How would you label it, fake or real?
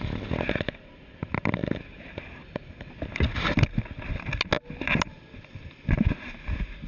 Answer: real